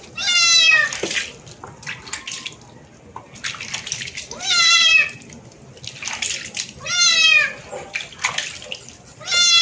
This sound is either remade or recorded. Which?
recorded